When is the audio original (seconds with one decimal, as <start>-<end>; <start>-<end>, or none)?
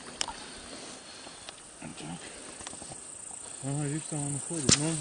0.0-5.0